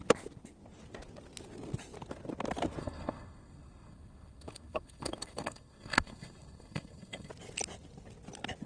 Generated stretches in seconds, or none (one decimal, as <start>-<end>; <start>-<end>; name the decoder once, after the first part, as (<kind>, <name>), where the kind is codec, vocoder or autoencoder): 2.8-7.3 (codec, SNAC)